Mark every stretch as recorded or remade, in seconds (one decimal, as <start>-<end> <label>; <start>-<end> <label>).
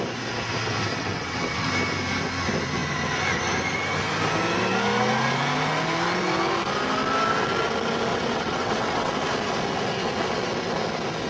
0.0-0.9 recorded; 0.9-1.7 remade; 1.7-8.1 recorded; 8.1-9.1 remade; 9.1-11.3 recorded